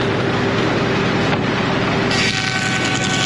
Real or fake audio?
real